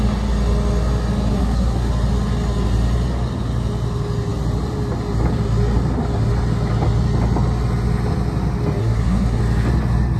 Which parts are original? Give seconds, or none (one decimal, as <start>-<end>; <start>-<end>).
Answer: 0.0-1.3; 1.9-8.8; 9.4-10.2